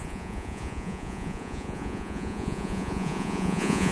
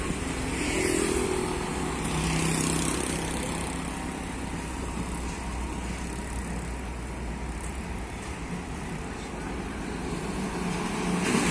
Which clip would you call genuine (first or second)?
second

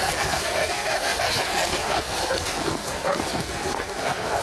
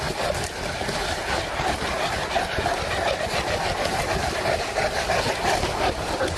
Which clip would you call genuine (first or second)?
second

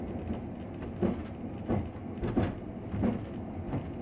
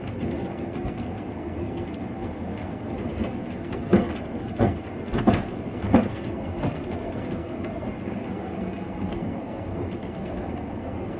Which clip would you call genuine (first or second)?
first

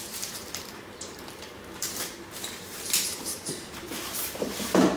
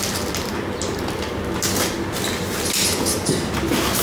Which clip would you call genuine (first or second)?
second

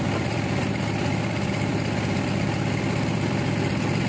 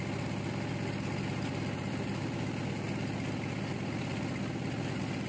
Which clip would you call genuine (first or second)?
second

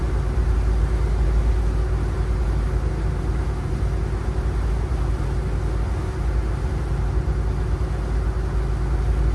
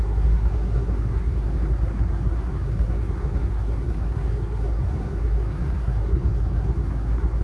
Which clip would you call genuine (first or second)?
first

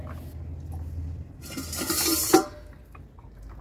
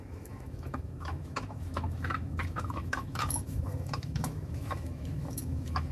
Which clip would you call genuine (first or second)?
first